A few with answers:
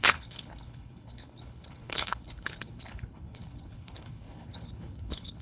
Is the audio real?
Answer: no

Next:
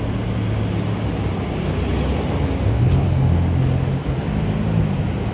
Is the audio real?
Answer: yes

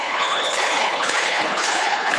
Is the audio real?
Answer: no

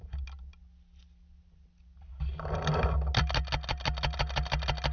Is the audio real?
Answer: yes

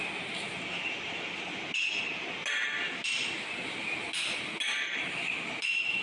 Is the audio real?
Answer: yes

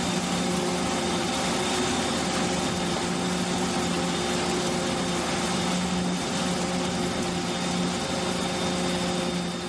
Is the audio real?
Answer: yes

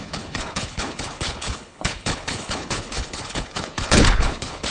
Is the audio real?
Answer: no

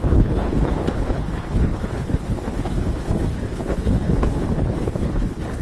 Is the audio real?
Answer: no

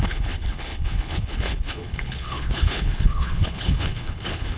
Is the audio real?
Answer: no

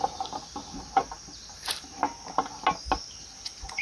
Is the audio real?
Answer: yes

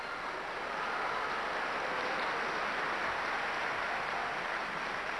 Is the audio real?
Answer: yes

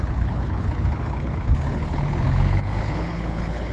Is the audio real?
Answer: no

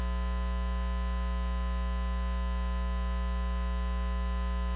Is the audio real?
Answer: yes